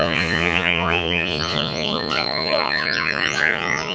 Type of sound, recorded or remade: remade